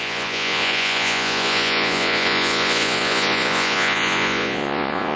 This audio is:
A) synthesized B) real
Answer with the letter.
A